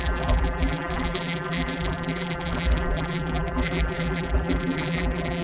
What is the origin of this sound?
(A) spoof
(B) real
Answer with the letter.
A